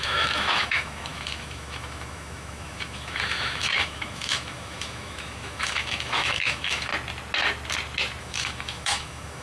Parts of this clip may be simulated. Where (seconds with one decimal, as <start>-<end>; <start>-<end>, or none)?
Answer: 0.0-6.9; 8.2-9.4